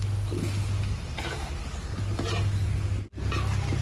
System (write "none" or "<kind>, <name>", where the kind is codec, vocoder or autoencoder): none